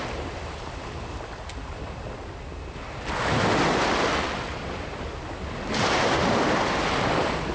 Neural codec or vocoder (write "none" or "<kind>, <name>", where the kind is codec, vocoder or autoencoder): none